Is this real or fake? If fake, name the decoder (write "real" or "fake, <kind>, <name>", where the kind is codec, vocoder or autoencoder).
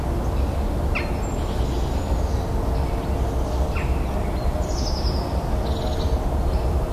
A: real